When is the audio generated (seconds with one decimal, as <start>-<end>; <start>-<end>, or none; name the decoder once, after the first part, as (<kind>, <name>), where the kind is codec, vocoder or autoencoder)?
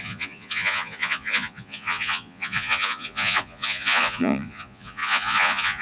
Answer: 0.0-5.8 (vocoder, Vocos)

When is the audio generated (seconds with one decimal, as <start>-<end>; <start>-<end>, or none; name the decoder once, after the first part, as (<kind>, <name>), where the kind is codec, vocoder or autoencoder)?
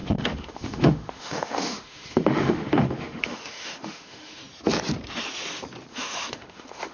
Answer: 0.0-4.4 (autoencoder, DAC-VAE); 5.9-6.9